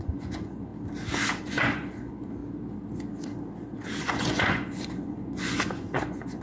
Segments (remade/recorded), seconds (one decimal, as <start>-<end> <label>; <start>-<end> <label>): 0.0-0.7 remade; 0.7-1.4 recorded; 1.4-2.4 remade; 2.4-4.0 recorded; 4.0-6.4 remade